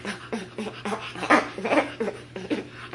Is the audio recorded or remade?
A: recorded